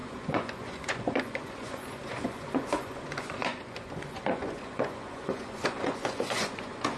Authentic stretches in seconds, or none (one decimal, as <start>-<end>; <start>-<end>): none